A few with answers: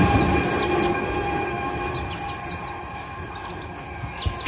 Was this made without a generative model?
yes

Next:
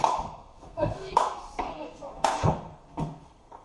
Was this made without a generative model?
no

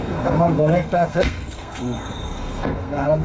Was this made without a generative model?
no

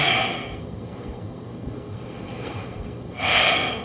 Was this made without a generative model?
no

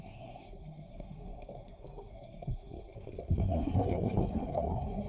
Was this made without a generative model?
no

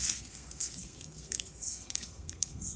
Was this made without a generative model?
no